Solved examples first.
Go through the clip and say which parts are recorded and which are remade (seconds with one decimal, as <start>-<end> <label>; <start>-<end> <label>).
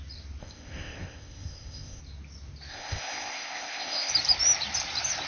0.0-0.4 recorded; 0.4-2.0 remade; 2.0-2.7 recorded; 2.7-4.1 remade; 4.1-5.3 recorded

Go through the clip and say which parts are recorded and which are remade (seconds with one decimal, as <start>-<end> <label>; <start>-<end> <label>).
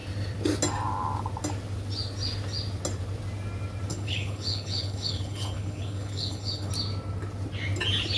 0.0-3.9 recorded; 3.9-6.7 remade; 6.7-8.2 recorded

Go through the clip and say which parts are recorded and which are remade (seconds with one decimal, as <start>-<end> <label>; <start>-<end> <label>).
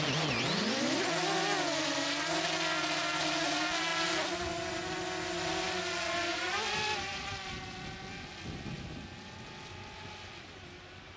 0.0-11.2 recorded